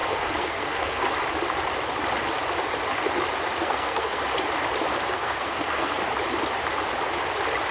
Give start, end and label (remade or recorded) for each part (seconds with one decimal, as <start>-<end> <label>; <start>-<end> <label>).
0.0-1.1 remade; 1.1-3.6 recorded; 3.6-4.2 remade; 4.2-5.1 recorded; 5.1-5.9 remade; 5.9-7.7 recorded